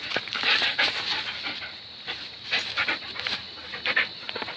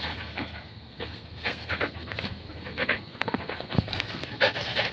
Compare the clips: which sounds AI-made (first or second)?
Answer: second